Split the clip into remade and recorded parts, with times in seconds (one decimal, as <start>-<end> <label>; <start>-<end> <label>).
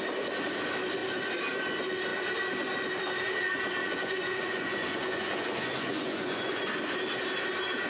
0.0-3.8 recorded; 3.8-6.6 remade; 6.6-7.9 recorded